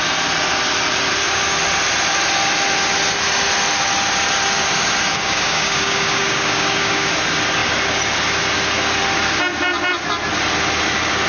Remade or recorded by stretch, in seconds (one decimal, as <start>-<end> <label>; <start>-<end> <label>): 0.0-5.1 recorded; 5.1-7.1 remade; 7.1-11.3 recorded